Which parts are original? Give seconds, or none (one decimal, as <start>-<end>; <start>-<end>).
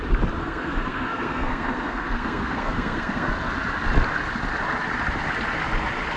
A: 0.0-0.4; 3.3-6.2